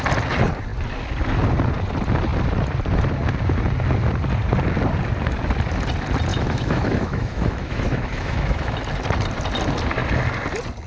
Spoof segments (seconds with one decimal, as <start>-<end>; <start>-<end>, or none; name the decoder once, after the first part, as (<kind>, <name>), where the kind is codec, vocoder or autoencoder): 6.3-8.8 (autoencoder, DAC-VAE)